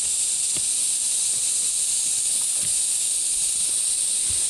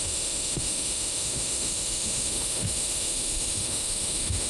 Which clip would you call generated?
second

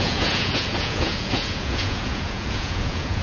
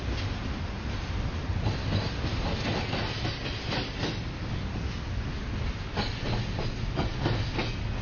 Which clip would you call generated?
first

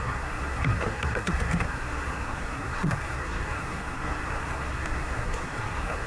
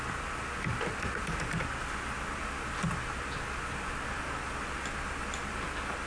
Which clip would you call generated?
first